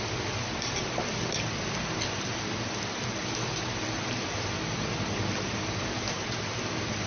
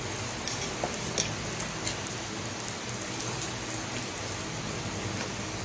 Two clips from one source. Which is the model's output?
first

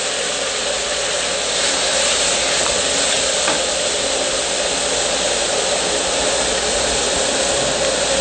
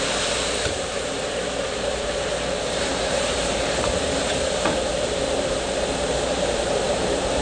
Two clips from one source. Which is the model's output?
second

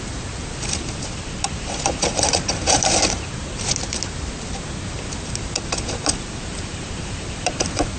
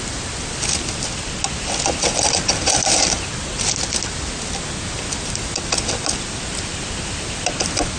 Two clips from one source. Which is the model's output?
first